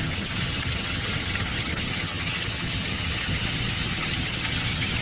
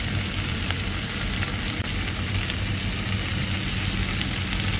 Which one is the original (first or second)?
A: second